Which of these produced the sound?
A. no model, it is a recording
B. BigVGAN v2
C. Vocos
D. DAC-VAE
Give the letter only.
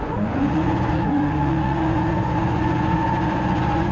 C